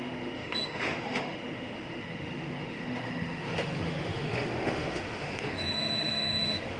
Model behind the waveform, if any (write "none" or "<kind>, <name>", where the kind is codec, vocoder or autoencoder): autoencoder, DAC-VAE